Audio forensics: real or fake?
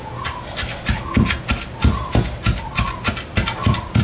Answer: real